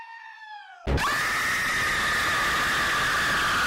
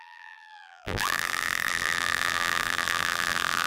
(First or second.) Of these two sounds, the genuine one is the first